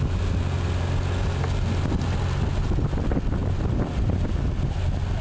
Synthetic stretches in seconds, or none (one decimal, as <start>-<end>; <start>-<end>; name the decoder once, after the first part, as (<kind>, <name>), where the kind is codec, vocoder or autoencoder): none